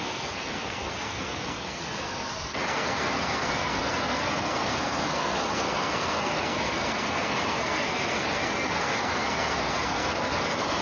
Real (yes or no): no